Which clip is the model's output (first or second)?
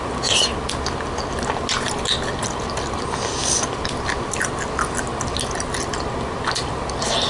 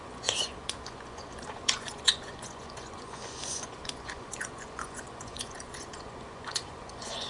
second